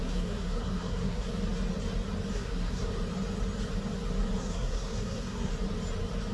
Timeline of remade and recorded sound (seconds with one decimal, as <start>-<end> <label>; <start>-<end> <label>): 0.0-1.3 remade; 1.3-2.3 recorded; 2.3-2.9 remade; 2.9-4.4 recorded; 4.4-5.5 remade; 5.5-6.3 recorded

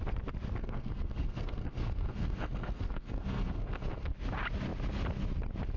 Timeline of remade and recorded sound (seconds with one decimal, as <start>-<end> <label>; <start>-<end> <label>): 0.0-0.6 recorded; 0.6-4.1 remade; 4.1-5.8 recorded